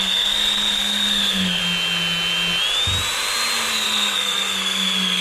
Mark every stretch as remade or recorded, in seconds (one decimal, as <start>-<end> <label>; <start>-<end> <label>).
0.0-1.6 remade; 1.6-3.7 recorded; 3.7-5.2 remade